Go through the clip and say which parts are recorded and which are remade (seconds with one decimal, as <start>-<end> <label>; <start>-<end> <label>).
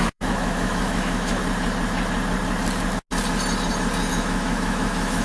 0.0-1.4 remade; 1.4-4.1 recorded; 4.1-5.2 remade